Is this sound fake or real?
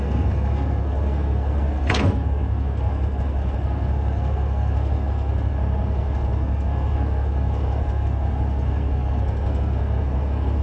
fake